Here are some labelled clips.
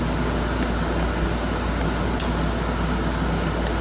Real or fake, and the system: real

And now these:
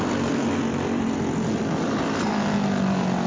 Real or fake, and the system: real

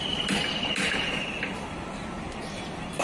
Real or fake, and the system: real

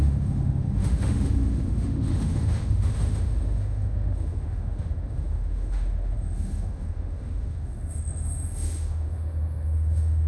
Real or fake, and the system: fake, autoencoder, DAC-VAE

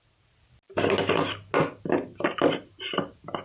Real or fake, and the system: real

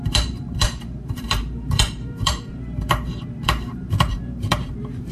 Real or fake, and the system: fake, vocoder, BigVGAN v2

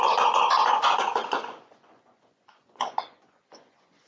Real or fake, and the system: fake, vocoder, Vocos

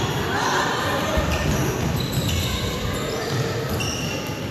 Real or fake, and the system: real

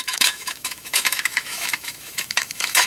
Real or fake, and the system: fake, autoencoder, DAC-VAE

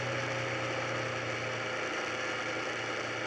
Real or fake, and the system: real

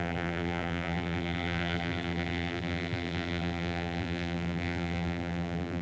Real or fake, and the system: fake, vocoder, BigVGAN v2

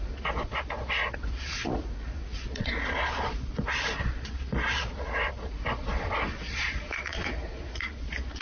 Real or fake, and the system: fake, vocoder, Vocos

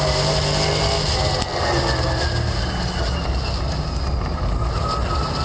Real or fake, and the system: real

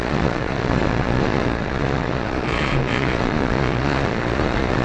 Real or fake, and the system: fake, vocoder, Vocos